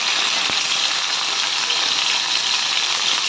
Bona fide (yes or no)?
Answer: yes